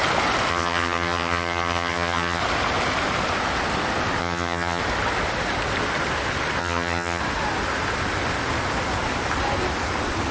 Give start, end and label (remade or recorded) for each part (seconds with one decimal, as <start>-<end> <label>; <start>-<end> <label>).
0.0-0.5 recorded; 0.5-2.4 remade; 2.4-4.2 recorded; 4.2-4.8 remade; 4.8-6.6 recorded; 6.6-7.2 remade; 7.2-10.3 recorded